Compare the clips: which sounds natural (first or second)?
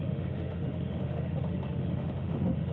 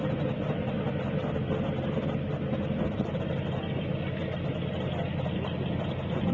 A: second